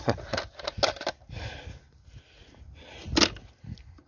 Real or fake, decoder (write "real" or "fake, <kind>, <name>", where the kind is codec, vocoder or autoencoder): real